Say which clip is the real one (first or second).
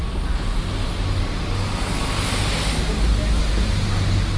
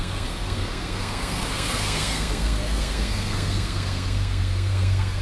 first